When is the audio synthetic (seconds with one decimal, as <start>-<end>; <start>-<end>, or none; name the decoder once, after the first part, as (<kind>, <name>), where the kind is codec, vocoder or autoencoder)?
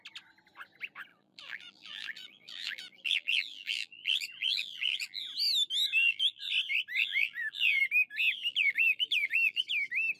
1.1-5.2 (vocoder, BigVGAN v2); 6.0-6.5; 7.0-7.8; 8.5-9.6